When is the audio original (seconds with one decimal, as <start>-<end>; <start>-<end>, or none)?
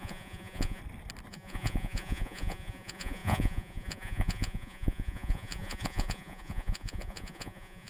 0.8-1.3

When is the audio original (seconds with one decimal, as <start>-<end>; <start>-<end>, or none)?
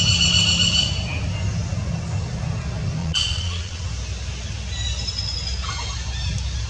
0.0-3.0; 3.8-6.7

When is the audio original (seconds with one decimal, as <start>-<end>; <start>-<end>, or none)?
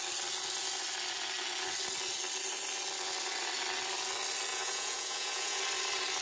0.0-4.5; 5.6-6.2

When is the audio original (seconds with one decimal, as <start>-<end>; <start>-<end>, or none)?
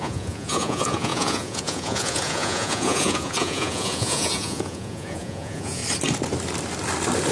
5.8-7.3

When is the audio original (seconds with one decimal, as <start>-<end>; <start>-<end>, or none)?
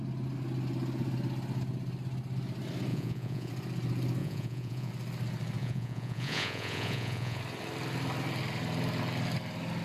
0.0-2.9; 3.5-4.2; 4.9-5.6; 7.4-9.8